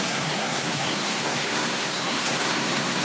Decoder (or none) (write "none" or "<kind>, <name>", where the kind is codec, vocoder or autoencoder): codec, SNAC